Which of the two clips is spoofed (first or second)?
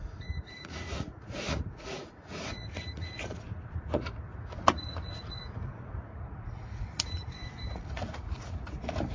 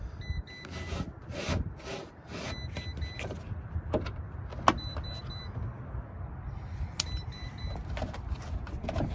first